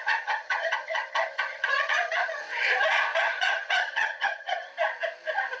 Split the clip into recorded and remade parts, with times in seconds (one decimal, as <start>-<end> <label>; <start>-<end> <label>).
0.0-2.4 remade; 2.4-3.2 recorded; 3.2-4.7 remade; 4.7-5.6 recorded